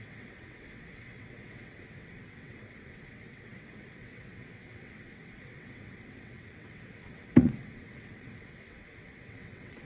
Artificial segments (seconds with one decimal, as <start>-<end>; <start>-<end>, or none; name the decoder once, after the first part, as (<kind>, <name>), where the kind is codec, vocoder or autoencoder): 0.0-9.8 (vocoder, WaveNeXt)